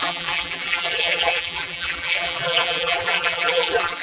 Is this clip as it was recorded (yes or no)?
no